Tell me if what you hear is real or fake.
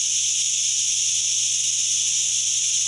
real